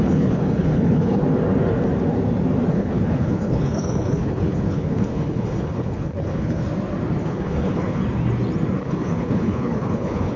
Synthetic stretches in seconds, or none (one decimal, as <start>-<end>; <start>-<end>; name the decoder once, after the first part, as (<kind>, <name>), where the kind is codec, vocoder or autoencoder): 0.0-1.2 (codec, HILCodec); 2.7-6.6; 7.2-8.0; 8.8-10.4